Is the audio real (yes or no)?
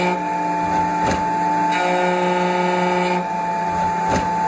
yes